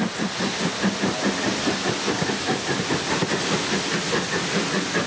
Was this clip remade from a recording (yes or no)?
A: no